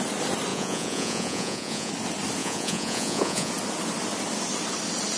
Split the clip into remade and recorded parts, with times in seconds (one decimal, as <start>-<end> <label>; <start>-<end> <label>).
0.0-0.5 recorded; 0.5-1.9 remade; 1.9-2.4 recorded; 2.4-3.5 remade; 3.5-5.2 recorded